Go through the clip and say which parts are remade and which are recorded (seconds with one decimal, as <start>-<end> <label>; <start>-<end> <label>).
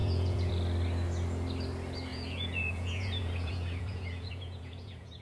0.0-0.5 remade; 0.5-2.1 recorded; 2.1-5.2 remade